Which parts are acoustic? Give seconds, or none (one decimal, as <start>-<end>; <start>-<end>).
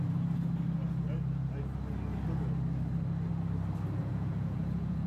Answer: 0.0-4.0